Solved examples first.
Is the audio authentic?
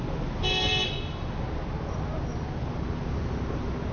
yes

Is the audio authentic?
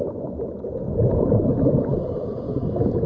yes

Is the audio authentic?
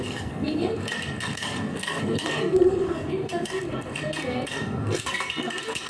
no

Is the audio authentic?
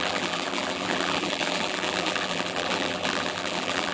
no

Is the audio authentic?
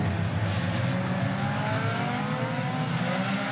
yes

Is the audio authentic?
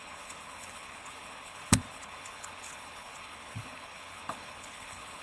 no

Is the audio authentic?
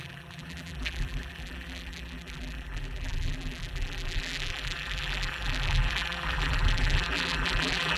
no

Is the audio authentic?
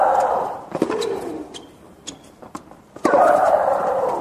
no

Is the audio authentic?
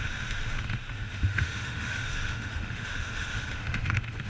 no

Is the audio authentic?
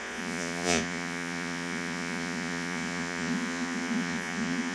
no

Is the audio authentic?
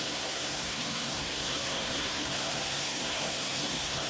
no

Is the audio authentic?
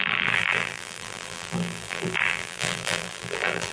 no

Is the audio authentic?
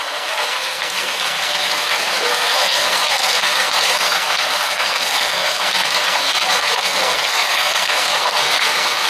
no